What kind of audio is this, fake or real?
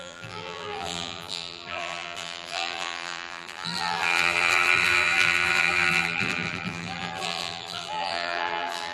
fake